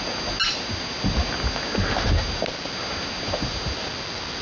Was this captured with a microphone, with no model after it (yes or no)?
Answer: yes